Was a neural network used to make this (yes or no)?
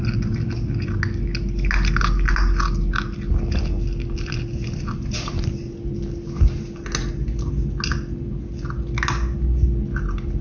no